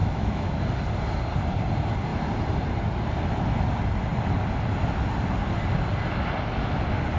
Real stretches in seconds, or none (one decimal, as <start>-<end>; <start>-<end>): 0.6-7.2